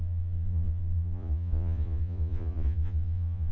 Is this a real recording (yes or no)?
no